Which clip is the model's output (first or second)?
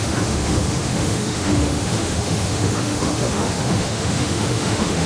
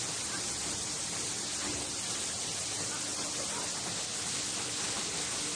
first